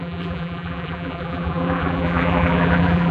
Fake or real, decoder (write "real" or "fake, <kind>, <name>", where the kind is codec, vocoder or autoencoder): fake, vocoder, BigVGAN v2